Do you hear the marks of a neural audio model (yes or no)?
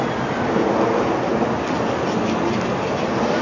no